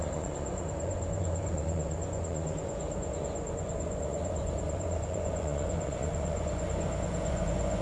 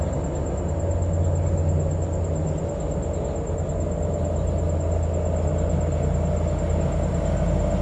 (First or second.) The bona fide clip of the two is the second